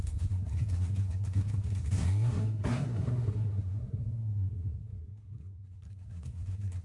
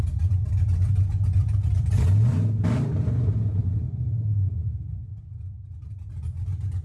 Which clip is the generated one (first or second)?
first